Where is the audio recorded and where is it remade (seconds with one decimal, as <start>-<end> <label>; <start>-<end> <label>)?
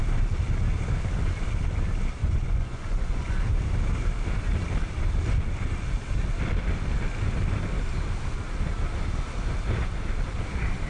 0.0-2.2 recorded; 2.2-3.4 remade; 3.4-10.9 recorded